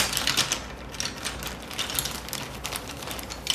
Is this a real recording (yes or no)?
yes